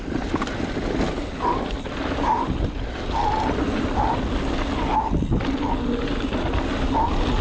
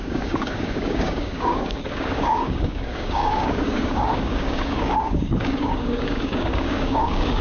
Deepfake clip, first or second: second